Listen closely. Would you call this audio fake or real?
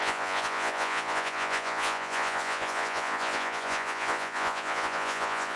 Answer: fake